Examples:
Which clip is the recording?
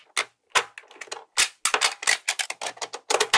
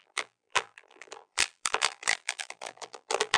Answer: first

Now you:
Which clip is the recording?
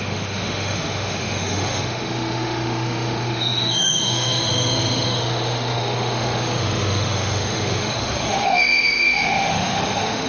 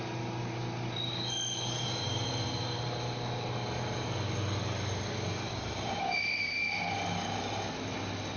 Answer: second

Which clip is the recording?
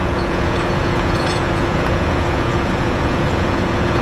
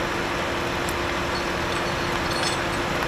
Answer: second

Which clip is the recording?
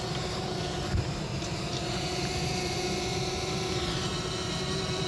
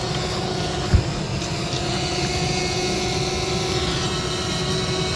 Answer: second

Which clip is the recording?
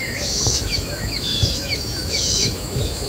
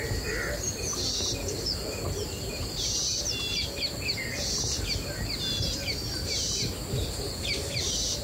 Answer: second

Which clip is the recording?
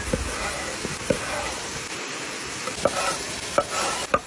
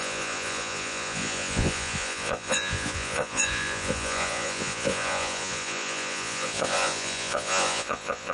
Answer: first